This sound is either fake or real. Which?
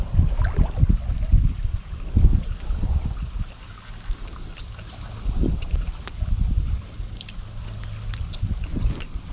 real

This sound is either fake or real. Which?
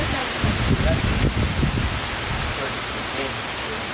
real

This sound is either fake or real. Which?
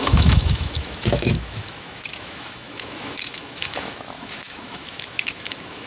fake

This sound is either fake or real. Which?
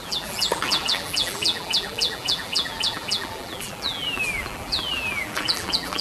fake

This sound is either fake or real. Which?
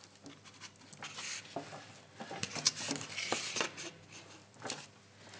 real